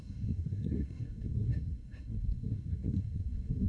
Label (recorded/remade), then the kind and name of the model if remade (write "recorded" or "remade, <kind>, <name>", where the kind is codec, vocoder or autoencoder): remade, codec, SNAC